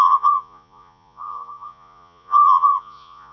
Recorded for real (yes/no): no